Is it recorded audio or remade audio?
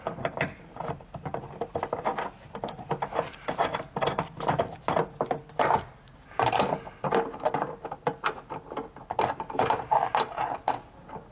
recorded